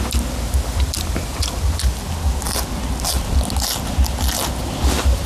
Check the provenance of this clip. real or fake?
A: real